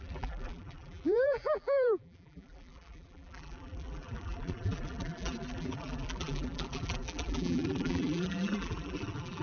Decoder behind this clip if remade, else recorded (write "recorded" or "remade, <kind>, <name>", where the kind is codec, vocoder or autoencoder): remade, vocoder, BigVGAN v2